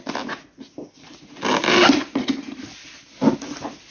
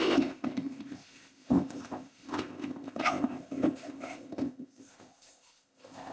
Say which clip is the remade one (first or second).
second